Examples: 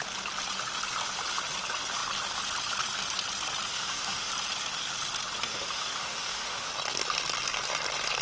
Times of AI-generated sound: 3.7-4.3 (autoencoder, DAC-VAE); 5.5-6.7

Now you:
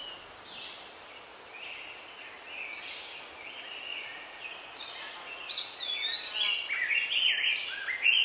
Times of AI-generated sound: 3.9-5.9 (vocoder, Vocos)